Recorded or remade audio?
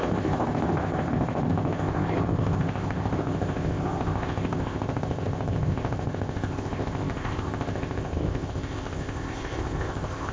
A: remade